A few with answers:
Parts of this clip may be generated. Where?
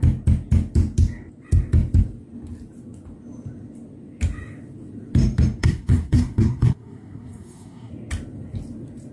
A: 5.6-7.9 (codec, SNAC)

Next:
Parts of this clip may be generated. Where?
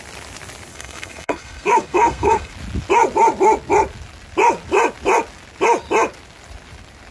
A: 0.7-2.5 (codec, SNAC)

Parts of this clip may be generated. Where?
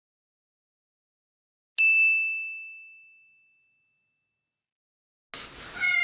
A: none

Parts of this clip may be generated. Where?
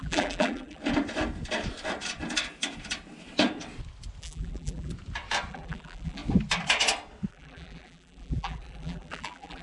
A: 0.0-0.8 (vocoder, BigVGAN v2); 4.2-4.9; 5.5-6.2; 7.3-9.6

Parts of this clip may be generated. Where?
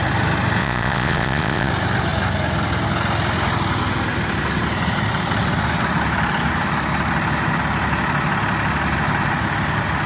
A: 0.6-1.7 (vocoder, Vocos)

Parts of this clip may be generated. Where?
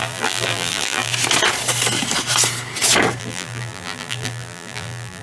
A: 0.0-1.1 (vocoder, BigVGAN v2); 3.2-5.2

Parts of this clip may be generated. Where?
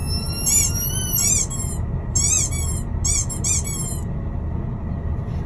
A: 0.0-1.3 (vocoder, BigVGAN v2)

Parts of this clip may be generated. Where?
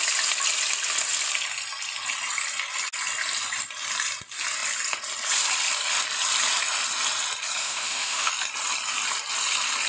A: 7.6-8.3 (autoencoder, DAC-VAE)